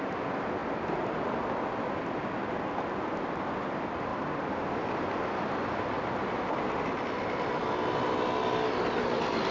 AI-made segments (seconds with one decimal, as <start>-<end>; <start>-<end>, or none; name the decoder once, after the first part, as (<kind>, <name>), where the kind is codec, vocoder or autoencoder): none